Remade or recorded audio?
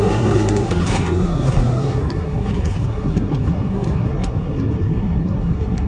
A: remade